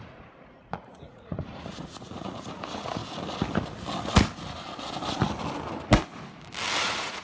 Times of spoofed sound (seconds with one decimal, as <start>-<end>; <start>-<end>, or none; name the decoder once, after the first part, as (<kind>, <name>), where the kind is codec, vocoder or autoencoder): 0.0-3.0 (vocoder, Vocos); 6.8-7.2